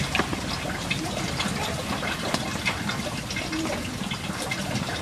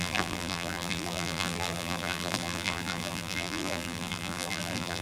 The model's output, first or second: second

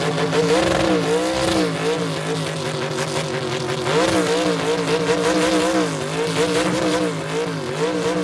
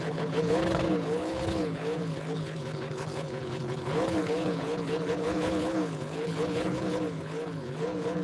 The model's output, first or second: second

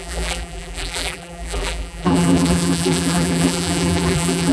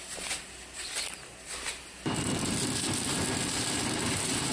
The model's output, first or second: first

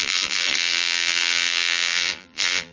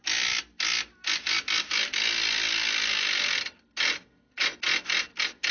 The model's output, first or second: first